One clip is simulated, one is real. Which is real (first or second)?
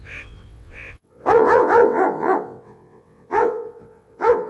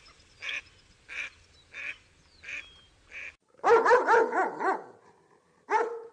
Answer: second